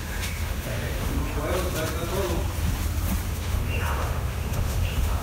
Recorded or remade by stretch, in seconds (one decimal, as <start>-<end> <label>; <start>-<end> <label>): 0.0-1.2 remade; 1.2-3.3 recorded; 3.3-5.2 remade